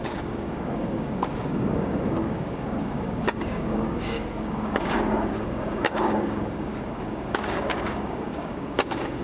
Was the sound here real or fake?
fake